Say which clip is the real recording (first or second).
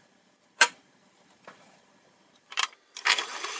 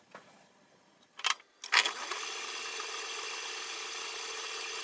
second